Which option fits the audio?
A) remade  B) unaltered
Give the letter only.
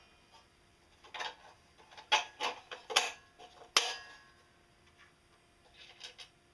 B